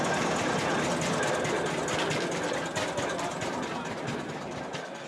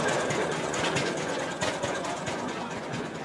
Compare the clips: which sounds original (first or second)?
first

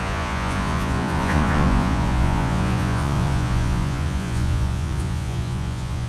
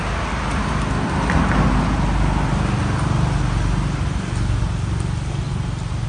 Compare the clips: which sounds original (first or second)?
second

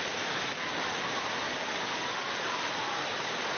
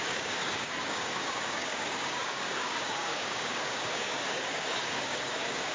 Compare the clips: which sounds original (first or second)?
first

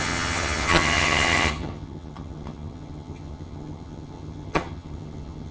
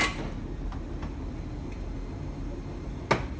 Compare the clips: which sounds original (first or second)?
second